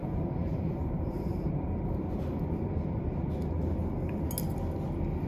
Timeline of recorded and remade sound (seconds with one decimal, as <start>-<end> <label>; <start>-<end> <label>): 0.0-2.7 remade; 2.7-5.3 recorded